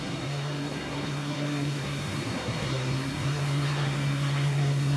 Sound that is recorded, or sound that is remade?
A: remade